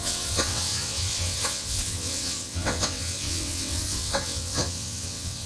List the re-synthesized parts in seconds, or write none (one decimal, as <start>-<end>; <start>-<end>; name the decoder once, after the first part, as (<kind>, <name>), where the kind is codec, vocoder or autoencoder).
0.0-5.5 (vocoder, WaveNeXt)